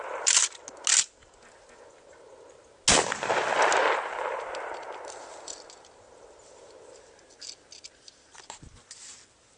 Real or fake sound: real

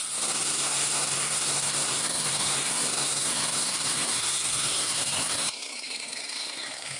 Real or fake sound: fake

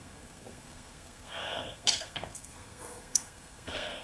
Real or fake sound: fake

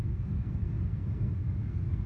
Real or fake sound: fake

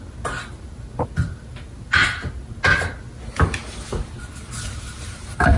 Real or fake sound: real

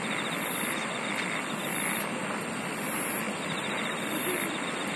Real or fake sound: real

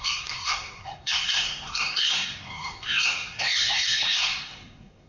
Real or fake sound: fake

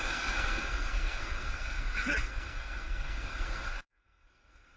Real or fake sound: fake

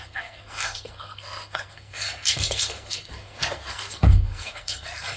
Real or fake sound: fake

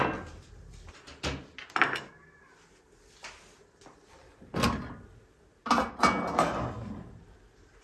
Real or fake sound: real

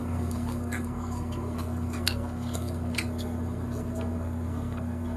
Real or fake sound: fake